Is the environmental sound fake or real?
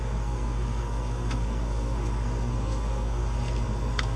fake